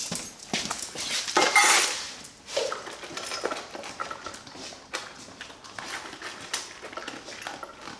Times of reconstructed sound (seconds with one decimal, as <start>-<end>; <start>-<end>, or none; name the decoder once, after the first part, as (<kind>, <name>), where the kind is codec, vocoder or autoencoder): none